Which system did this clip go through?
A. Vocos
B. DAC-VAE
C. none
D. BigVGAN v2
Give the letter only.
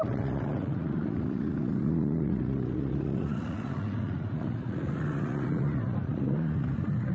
A